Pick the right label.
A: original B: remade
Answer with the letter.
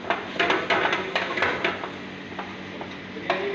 A